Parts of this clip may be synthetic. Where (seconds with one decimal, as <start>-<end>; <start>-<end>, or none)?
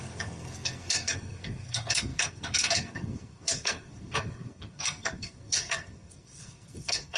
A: 0.0-7.2